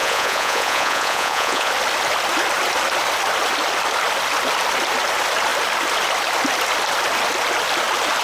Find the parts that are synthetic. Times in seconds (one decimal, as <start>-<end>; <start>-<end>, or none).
0.0-1.7